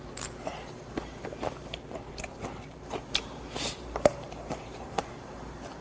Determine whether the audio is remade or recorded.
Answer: remade